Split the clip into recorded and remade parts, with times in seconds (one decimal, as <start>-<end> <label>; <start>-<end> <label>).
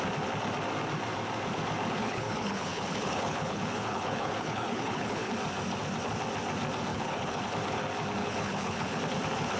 0.0-2.0 recorded; 2.0-5.3 remade; 5.3-6.9 recorded; 6.9-7.4 remade; 7.4-8.2 recorded; 8.2-9.0 remade; 9.0-9.6 recorded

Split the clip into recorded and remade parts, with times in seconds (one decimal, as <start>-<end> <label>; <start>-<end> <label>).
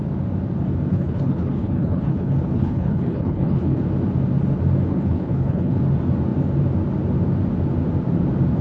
0.0-0.9 recorded; 0.9-3.8 remade; 3.8-4.9 recorded; 4.9-5.8 remade; 5.8-8.6 recorded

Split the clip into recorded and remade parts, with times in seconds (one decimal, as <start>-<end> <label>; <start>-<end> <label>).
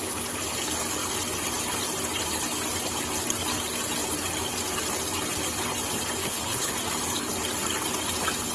0.0-6.2 recorded; 6.2-6.7 remade; 6.7-8.5 recorded